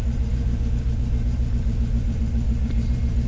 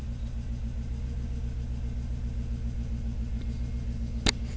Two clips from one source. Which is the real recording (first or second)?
second